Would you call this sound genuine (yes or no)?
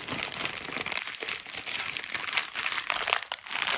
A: yes